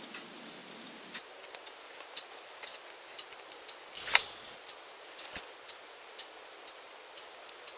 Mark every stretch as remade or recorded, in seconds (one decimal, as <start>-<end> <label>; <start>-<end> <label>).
0.0-7.8 recorded